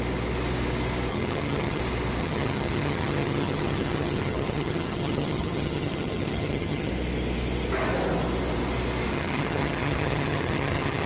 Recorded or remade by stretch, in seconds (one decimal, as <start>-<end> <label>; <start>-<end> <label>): 0.0-1.1 recorded; 1.1-1.8 remade; 1.8-2.2 recorded; 2.2-6.9 remade; 6.9-9.1 recorded; 9.1-11.1 remade